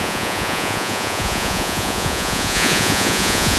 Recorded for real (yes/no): no